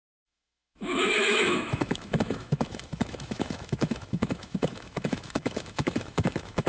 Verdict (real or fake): fake